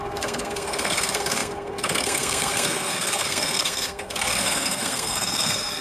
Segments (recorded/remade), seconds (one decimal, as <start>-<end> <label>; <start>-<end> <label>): 0.0-5.8 remade